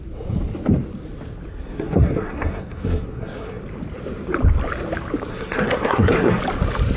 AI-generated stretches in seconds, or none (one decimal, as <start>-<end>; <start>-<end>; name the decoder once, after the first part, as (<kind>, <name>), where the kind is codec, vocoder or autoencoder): 1.5-3.6 (codec, SNAC); 5.3-6.4